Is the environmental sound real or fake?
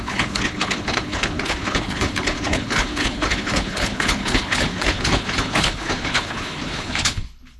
fake